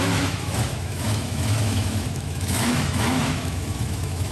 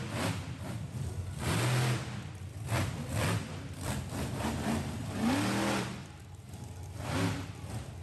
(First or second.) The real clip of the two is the second